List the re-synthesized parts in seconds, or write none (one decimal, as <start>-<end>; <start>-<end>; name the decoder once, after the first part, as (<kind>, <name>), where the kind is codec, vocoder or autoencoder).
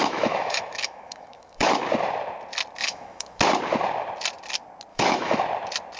0.0-1.8 (autoencoder, DAC-VAE); 2.8-3.4; 4.9-5.4